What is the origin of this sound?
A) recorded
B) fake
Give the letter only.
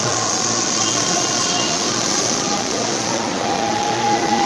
B